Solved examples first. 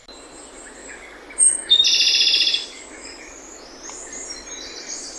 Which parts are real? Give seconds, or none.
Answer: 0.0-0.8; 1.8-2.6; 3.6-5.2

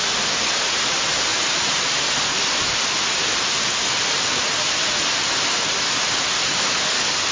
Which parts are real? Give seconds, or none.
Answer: 0.0-7.3